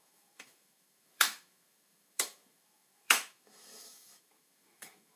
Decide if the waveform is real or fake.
fake